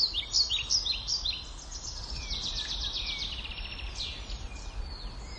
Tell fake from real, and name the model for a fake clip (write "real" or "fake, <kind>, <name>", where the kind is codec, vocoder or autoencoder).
real